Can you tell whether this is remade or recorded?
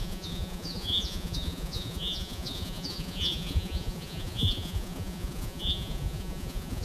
remade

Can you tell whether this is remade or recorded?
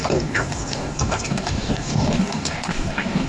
remade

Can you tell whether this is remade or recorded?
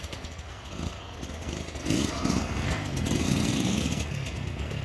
remade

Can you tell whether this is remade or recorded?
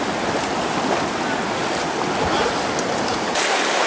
recorded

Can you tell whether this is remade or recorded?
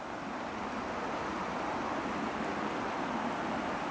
recorded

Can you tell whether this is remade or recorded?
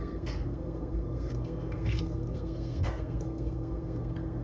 remade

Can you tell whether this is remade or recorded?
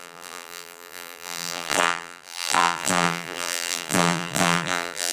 remade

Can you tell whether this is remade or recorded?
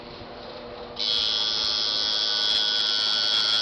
recorded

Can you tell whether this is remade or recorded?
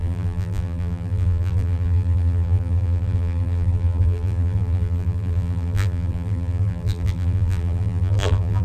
remade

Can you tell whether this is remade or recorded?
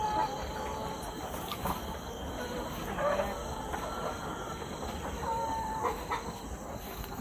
recorded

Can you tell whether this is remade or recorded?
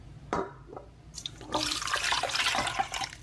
remade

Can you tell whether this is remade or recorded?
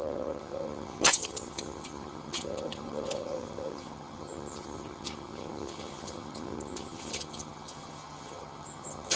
remade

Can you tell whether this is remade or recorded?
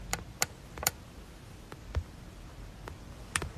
recorded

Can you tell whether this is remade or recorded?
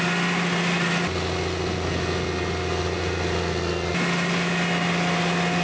recorded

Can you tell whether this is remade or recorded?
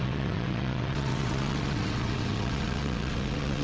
remade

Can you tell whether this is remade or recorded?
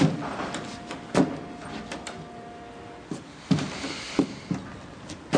recorded